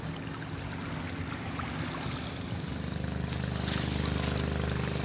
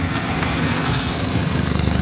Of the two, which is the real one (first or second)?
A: first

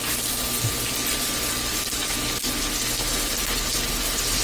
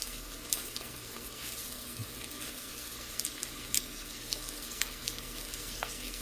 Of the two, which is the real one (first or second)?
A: first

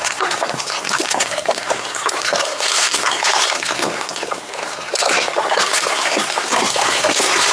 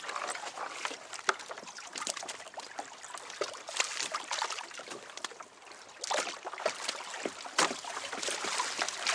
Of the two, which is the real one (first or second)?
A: second